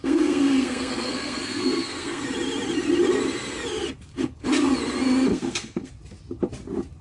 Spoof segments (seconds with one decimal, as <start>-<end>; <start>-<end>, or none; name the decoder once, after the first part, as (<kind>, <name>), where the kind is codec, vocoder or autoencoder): 0.0-2.2 (codec, SNAC); 5.3-5.9